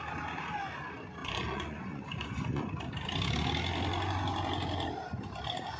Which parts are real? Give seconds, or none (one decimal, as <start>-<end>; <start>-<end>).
0.0-1.2; 2.7-5.8